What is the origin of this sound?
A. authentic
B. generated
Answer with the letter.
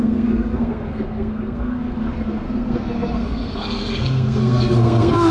B